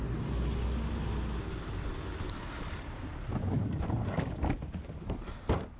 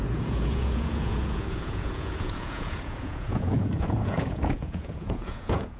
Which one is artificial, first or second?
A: second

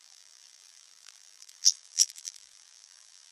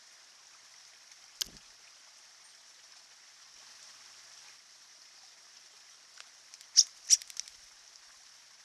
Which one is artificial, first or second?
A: first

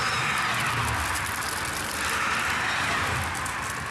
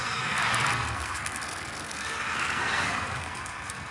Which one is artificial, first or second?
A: second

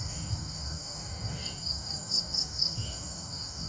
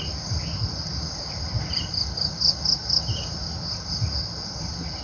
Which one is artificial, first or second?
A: first